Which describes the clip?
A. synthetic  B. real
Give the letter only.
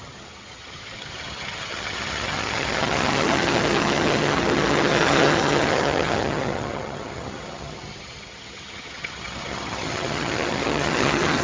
A